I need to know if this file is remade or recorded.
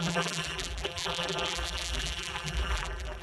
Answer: remade